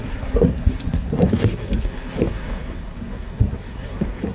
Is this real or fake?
fake